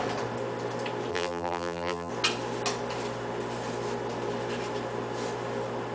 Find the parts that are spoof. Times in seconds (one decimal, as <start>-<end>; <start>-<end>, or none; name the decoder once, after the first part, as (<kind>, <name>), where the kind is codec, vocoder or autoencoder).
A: 1.1-2.1 (vocoder, BigVGAN v2)